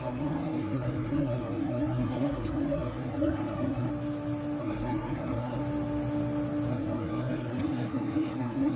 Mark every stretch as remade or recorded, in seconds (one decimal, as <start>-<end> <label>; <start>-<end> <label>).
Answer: 0.0-3.9 remade; 3.9-4.6 recorded; 4.6-5.6 remade; 5.6-6.7 recorded; 6.7-8.8 remade